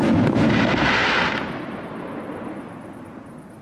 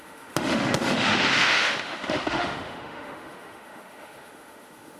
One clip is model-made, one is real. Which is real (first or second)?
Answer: first